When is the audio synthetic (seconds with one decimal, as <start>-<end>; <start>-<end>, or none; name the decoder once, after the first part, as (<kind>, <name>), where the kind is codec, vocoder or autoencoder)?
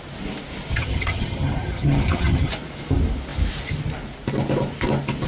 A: 0.7-2.5 (vocoder, HiFi-GAN)